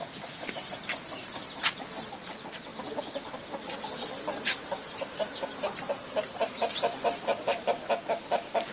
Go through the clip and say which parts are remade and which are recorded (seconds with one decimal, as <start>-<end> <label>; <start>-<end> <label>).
0.0-8.7 recorded